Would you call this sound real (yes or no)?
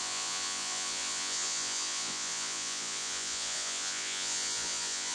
no